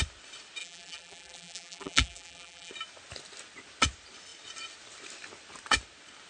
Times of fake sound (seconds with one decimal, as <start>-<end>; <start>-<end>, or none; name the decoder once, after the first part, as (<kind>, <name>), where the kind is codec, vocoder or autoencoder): 0.6-2.7 (vocoder, BigVGAN v2)